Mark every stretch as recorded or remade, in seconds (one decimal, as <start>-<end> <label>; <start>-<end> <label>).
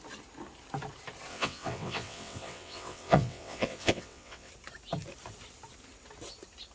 0.0-1.3 recorded; 1.3-4.5 remade; 4.5-6.7 recorded